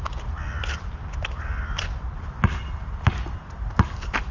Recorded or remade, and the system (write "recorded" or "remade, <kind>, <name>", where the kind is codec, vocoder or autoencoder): recorded